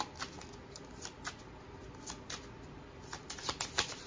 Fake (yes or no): no